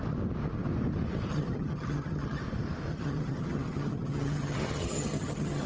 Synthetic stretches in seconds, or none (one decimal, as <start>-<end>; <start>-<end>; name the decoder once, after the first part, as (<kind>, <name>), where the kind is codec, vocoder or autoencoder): 1.3-2.4 (vocoder, HiFi-GAN); 2.9-5.7